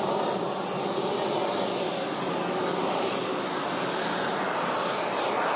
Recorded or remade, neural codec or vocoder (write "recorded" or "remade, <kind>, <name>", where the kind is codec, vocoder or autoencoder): recorded